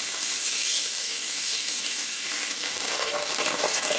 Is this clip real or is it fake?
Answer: fake